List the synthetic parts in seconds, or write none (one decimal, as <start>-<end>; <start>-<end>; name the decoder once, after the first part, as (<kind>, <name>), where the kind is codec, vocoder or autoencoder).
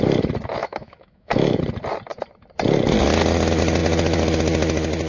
0.6-1.6 (autoencoder, DAC-VAE)